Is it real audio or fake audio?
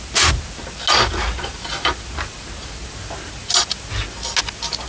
real